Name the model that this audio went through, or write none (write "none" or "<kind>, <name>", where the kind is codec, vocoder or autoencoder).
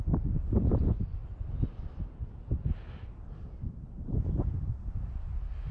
none